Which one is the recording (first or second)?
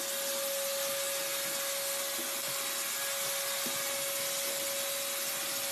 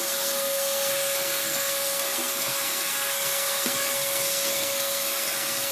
first